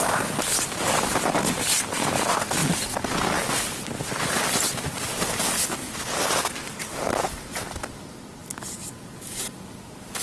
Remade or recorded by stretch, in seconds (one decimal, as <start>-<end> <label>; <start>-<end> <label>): 0.0-10.2 recorded